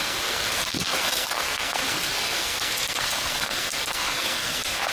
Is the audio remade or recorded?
remade